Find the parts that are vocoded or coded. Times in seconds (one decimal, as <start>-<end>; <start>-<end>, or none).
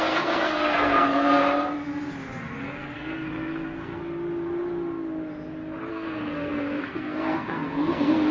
0.0-1.4; 2.6-4.0; 5.9-8.3